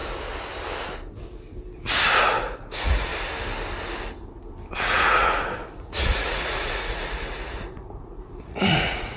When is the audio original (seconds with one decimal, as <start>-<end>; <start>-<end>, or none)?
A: 0.0-2.2; 3.1-4.7